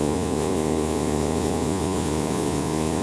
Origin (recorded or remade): remade